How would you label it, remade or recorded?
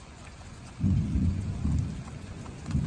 remade